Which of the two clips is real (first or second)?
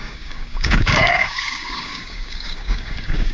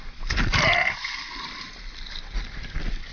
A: second